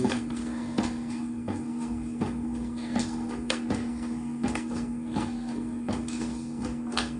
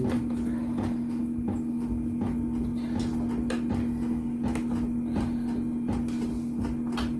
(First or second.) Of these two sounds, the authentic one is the second